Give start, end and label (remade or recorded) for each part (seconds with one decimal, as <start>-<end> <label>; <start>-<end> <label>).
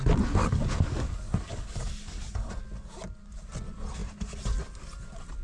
0.0-0.4 recorded; 0.4-2.5 remade; 2.5-5.4 recorded